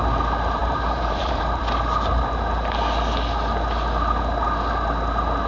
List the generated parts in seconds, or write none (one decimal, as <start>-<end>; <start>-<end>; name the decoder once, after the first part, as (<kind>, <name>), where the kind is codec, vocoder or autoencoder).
0.6-1.6 (vocoder, BigVGAN v2)